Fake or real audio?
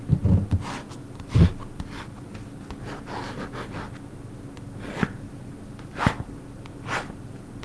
real